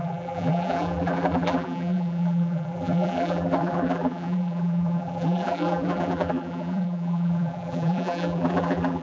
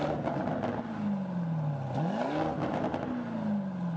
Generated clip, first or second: first